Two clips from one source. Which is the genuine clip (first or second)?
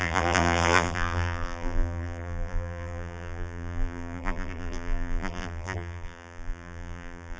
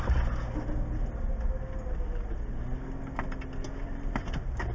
second